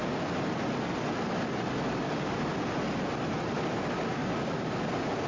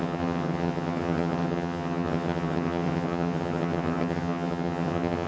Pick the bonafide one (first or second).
first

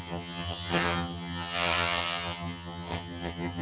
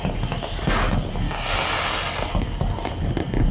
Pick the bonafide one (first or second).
second